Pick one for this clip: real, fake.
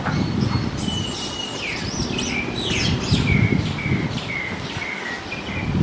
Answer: real